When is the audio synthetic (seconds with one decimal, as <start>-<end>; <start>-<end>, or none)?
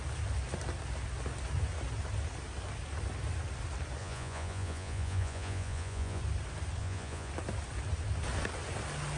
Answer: 4.0-6.2; 6.8-7.3